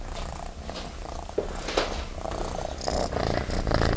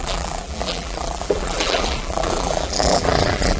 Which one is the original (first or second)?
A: first